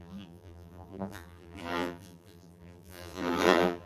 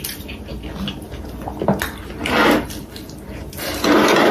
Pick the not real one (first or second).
first